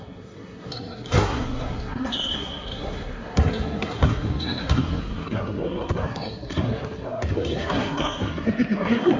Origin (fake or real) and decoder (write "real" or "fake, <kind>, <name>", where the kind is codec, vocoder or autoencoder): fake, codec, SNAC